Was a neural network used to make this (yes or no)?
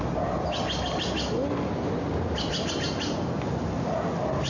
no